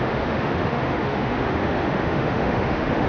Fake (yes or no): yes